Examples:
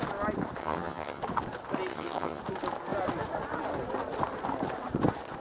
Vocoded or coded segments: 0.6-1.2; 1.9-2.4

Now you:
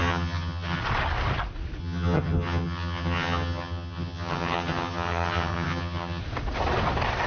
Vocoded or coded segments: 0.0-0.8; 1.8-6.2